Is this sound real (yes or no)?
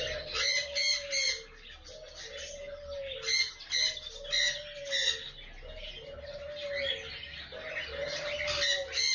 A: yes